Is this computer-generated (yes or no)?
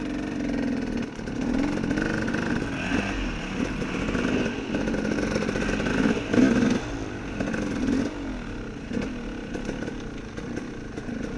no